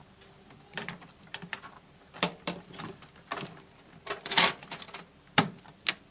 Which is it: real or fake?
real